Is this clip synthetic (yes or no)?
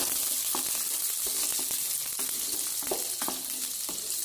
no